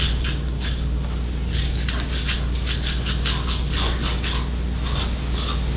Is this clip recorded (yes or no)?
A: yes